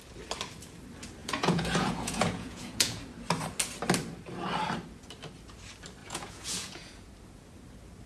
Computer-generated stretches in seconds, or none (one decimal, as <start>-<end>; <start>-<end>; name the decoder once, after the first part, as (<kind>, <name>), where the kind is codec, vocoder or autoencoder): 1.2-3.0 (vocoder, Vocos); 6.0-7.1

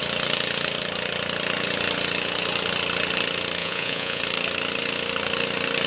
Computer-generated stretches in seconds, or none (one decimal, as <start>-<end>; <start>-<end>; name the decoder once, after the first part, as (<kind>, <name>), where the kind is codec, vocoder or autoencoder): 3.6-4.2 (vocoder, Vocos)

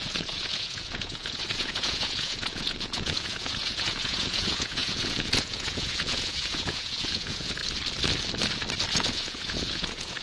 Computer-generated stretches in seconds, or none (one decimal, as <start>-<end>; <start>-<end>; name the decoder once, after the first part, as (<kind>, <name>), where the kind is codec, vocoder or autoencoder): 0.0-7.6 (vocoder, Vocos); 8.9-10.2